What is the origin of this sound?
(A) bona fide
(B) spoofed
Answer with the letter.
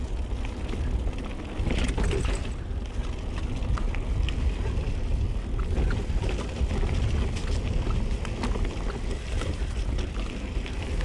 A